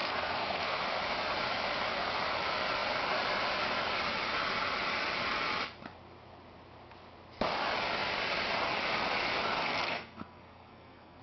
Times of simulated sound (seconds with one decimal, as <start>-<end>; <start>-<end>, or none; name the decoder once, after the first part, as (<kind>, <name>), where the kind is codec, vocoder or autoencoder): 0.0-0.8 (codec, SNAC); 9.6-11.2